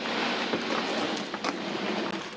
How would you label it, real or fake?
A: real